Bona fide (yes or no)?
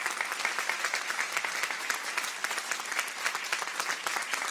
yes